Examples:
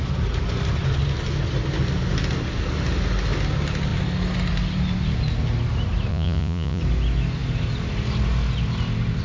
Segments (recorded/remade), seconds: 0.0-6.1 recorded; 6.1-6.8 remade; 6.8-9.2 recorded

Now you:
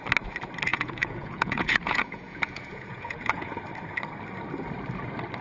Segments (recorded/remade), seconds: 0.0-0.7 recorded; 0.7-3.5 remade; 3.5-5.4 recorded

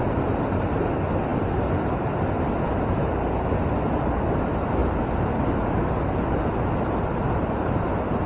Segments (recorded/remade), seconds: 0.0-8.3 recorded

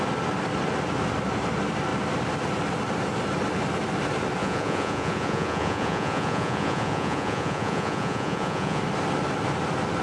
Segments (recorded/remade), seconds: 0.0-4.4 recorded; 4.4-8.8 remade; 8.8-10.0 recorded